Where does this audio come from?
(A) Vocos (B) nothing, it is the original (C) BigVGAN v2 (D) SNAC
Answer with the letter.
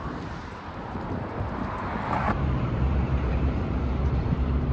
C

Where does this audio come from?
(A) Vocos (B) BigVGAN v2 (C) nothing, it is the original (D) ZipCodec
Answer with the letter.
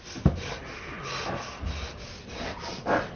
C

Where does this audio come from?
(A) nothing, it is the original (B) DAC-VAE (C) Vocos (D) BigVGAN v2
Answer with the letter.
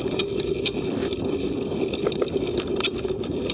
A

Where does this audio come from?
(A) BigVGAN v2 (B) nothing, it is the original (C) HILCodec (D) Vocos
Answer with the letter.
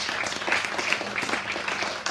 B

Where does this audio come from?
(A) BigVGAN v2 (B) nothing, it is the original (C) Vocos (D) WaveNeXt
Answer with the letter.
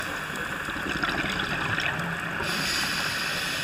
B